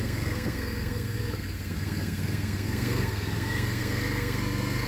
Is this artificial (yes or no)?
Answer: yes